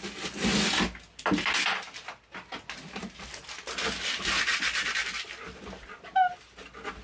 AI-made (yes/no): no